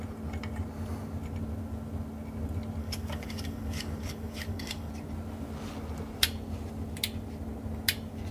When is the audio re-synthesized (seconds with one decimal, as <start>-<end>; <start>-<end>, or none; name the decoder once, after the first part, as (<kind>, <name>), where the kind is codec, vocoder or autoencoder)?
2.8-4.9 (codec, DAC)